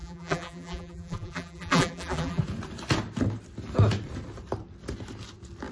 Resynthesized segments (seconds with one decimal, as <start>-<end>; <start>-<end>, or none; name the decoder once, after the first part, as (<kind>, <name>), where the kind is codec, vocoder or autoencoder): 0.0-2.4 (vocoder, BigVGAN v2)